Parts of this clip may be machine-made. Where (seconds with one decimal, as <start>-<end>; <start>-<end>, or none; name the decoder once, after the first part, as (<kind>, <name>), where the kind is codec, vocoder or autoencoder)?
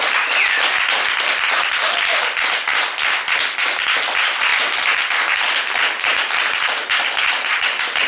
none